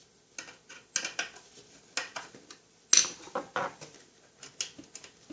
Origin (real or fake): real